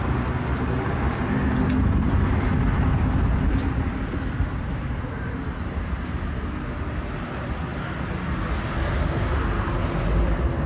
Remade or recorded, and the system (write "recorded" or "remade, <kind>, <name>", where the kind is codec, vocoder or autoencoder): recorded